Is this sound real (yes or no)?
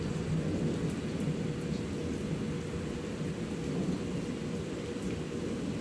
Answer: yes